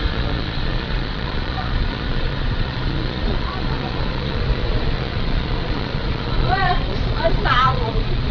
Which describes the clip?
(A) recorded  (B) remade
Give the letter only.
B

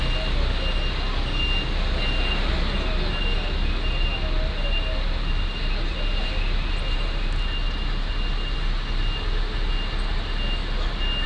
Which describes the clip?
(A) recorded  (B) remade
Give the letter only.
A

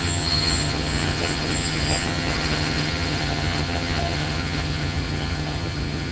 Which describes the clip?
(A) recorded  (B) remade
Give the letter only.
B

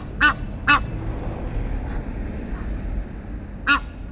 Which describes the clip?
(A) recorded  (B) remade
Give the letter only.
A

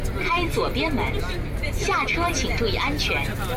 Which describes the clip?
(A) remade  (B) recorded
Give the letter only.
B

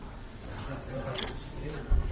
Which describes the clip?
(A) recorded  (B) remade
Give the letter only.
B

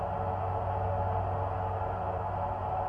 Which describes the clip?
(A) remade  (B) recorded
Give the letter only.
B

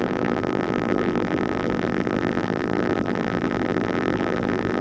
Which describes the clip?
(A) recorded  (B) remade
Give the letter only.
B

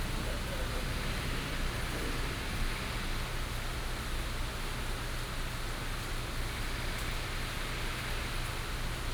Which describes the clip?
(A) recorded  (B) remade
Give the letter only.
A